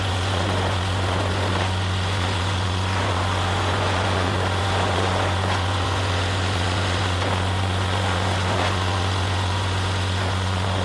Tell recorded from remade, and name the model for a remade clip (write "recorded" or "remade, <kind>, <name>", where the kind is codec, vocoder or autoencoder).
remade, vocoder, Vocos